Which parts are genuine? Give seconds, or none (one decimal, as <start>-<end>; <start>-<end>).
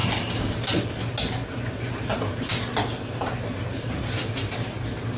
0.0-5.2